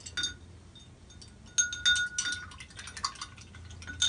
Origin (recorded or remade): recorded